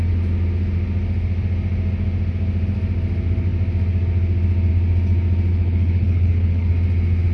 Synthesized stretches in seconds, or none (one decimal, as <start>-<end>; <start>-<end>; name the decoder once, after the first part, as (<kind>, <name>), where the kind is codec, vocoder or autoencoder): 5.5-6.7 (codec, HILCodec)